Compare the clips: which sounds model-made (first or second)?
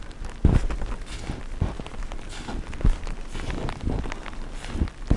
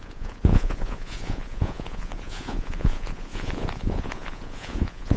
second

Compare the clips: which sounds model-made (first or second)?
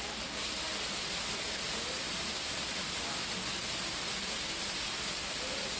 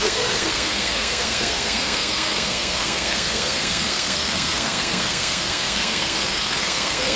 second